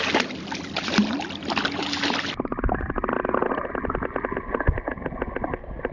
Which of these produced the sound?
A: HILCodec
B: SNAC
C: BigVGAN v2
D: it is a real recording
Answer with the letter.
D